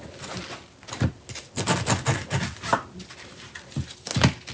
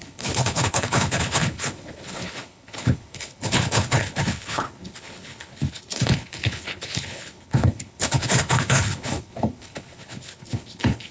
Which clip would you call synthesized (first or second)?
second